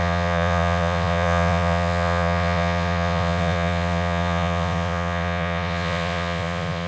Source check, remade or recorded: remade